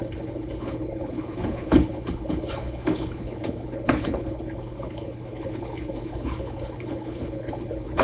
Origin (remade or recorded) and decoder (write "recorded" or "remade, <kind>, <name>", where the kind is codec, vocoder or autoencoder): remade, codec, HILCodec